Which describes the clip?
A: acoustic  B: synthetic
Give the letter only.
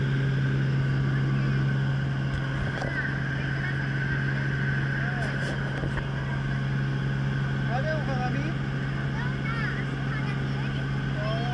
A